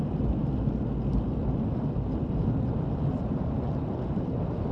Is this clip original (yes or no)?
yes